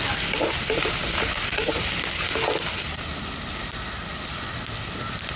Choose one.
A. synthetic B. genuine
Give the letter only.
B